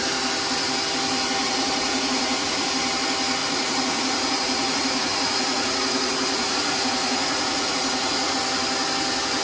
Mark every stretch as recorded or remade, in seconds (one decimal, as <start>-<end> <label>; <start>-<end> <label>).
0.0-1.4 recorded; 1.4-2.7 remade; 2.7-3.4 recorded; 3.4-8.3 remade; 8.3-9.4 recorded